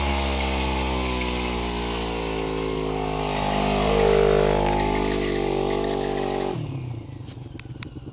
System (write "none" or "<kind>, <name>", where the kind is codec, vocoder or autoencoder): none